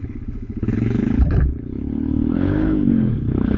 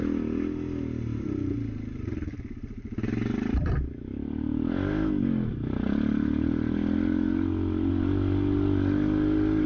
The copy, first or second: first